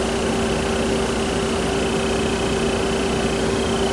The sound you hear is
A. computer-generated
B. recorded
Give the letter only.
B